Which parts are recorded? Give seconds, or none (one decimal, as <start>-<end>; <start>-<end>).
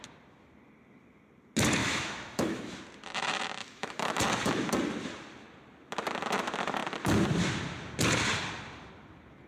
0.0-1.8; 2.8-3.6; 4.2-9.5